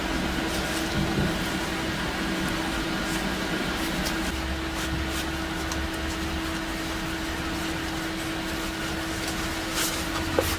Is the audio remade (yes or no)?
no